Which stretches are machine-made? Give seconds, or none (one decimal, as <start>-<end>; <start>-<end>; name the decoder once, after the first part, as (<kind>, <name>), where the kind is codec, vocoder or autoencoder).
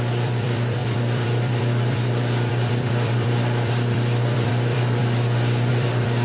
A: 0.0-5.0 (vocoder, BigVGAN v2); 5.7-6.2